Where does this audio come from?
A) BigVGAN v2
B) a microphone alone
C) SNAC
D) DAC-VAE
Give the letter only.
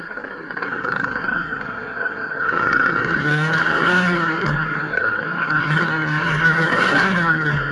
C